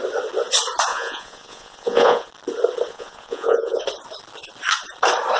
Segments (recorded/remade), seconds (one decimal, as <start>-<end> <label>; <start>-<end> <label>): 0.0-0.9 recorded; 0.9-2.3 remade; 2.3-2.9 recorded; 2.9-3.8 remade; 3.8-5.4 recorded